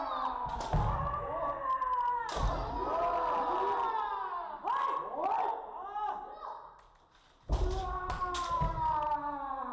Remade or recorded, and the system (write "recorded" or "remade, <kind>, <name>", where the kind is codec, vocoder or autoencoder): recorded